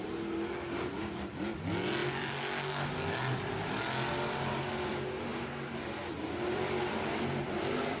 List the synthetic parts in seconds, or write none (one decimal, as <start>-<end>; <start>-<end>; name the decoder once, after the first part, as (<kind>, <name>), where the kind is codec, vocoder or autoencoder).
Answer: none